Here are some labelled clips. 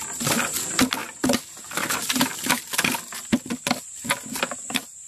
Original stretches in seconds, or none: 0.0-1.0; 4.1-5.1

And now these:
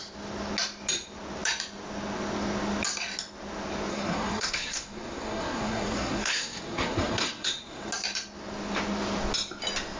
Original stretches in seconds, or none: 0.0-3.9; 7.9-10.0

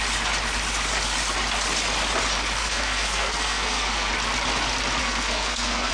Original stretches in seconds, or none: 0.0-2.6; 4.1-5.0

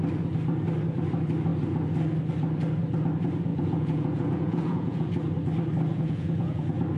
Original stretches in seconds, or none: 0.0-3.5; 5.1-5.9; 6.6-7.0

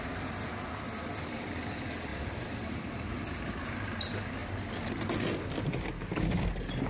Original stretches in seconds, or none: 0.0-2.1; 3.1-6.9